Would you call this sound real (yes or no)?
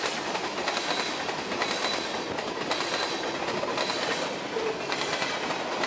yes